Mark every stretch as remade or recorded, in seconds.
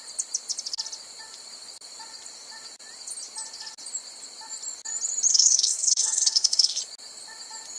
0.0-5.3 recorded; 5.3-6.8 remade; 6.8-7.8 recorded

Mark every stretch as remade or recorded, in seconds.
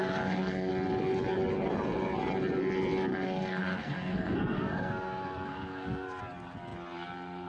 0.0-0.7 remade; 0.7-3.1 recorded; 3.1-6.2 remade; 6.2-7.5 recorded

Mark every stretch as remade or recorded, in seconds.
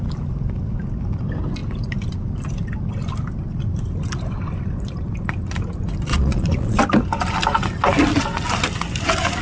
0.0-6.1 recorded; 6.1-6.8 remade; 6.8-9.4 recorded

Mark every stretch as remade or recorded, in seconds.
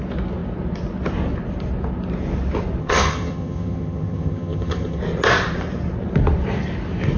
0.0-2.8 recorded; 2.8-5.0 remade; 5.0-7.2 recorded